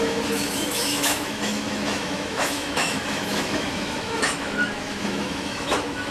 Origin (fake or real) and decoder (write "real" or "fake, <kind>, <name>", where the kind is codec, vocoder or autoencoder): fake, autoencoder, DAC-VAE